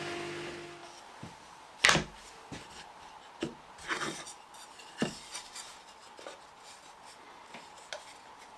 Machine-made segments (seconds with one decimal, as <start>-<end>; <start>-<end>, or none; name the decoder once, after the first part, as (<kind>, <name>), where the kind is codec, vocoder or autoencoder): none